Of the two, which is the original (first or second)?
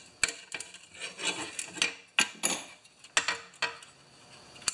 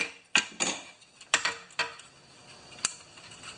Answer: first